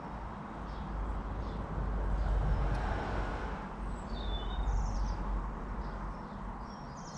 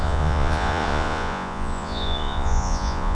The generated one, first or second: second